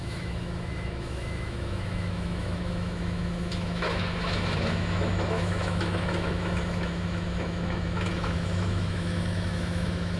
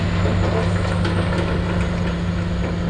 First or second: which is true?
second